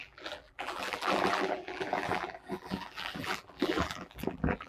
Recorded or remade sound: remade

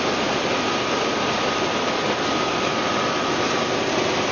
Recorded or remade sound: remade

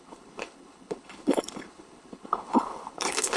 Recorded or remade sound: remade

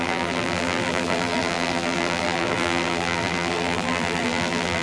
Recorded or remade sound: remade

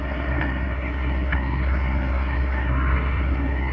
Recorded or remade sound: remade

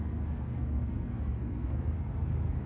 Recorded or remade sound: remade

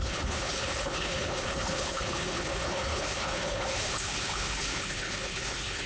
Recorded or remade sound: remade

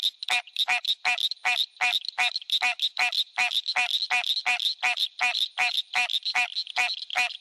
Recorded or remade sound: recorded